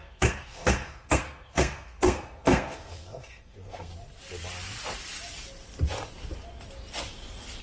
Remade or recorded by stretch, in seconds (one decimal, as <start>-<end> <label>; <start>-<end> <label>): 0.0-3.9 remade; 3.9-7.6 recorded